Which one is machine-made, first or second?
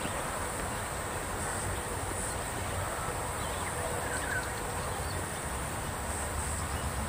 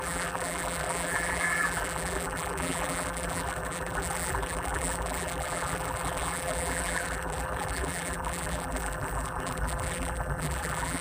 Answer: second